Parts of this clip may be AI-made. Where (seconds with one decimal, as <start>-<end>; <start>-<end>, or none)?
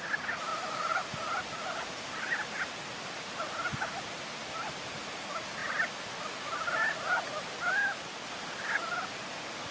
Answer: none